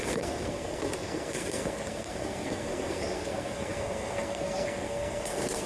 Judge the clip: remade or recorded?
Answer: remade